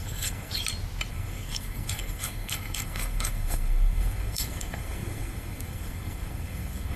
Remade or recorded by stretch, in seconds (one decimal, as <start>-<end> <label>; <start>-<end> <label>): 0.0-0.5 remade; 0.5-1.1 recorded; 1.1-7.0 remade